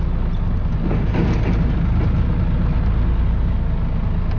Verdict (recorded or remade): recorded